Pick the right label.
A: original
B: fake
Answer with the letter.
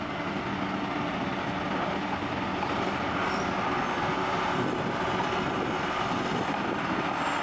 A